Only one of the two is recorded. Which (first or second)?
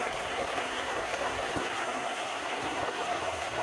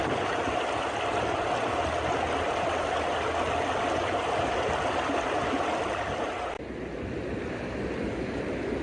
second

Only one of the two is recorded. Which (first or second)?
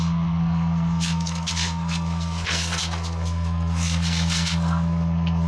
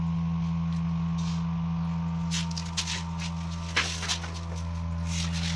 second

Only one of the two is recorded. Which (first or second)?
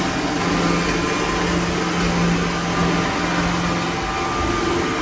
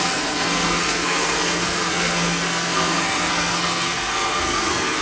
first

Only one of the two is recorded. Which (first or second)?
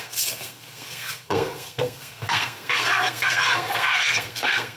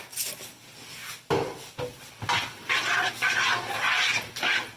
second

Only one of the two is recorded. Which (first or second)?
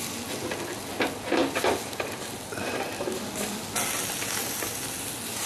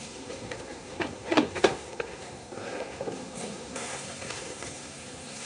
first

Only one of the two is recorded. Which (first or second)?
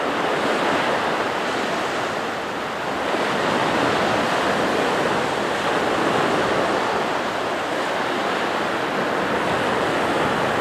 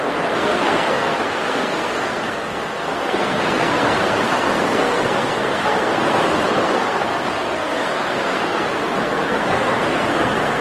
first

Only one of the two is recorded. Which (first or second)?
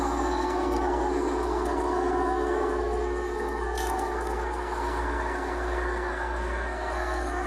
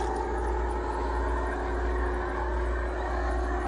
second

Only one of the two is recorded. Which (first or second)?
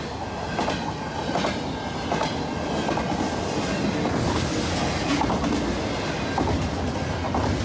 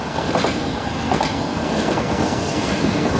first